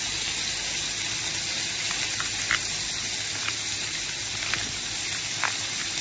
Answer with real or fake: real